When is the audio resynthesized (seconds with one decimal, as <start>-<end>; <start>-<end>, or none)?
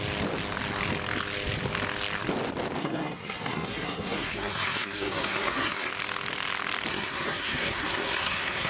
2.8-5.9; 6.9-8.7